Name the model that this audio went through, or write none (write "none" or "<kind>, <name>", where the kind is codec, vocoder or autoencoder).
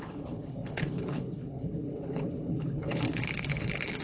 codec, HILCodec